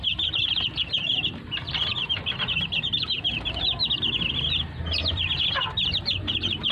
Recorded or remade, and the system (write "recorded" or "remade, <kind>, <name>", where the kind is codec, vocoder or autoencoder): remade, vocoder, BigVGAN v2